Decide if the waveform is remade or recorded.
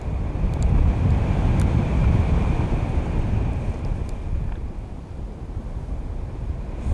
recorded